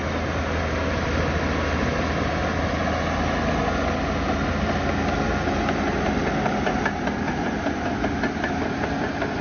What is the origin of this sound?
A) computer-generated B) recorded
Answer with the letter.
B